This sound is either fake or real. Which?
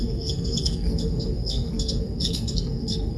fake